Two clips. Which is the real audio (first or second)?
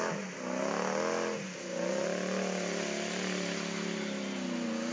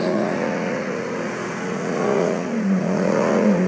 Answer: first